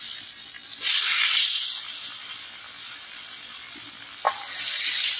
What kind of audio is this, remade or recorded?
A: recorded